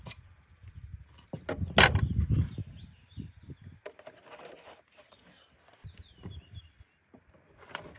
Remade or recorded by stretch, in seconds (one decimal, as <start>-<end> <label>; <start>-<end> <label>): 0.0-0.9 remade; 0.9-4.6 recorded; 4.6-8.0 remade